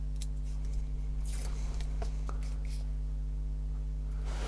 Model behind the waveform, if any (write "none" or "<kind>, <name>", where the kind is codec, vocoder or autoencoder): none